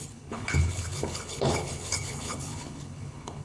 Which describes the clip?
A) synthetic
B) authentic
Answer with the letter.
A